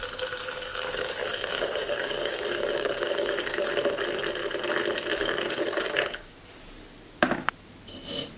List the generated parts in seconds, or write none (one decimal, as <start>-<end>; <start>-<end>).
0.7-3.7; 5.1-6.3